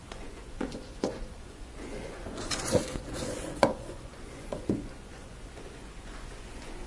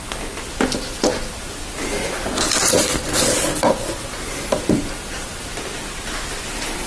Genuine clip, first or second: second